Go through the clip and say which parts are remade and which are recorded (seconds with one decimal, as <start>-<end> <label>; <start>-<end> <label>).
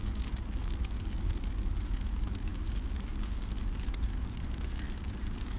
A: 0.0-5.6 remade